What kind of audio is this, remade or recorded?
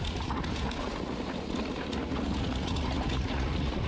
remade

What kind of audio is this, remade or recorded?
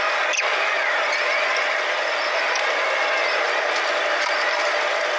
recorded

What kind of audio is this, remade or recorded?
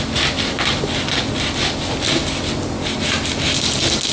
recorded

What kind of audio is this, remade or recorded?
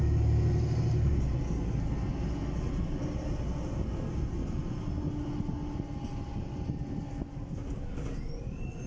recorded